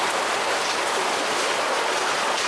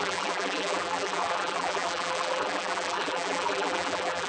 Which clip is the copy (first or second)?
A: second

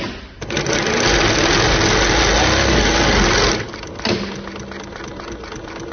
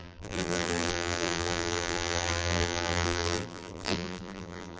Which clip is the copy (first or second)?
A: second